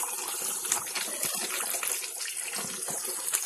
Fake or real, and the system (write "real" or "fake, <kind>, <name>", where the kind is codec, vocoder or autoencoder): real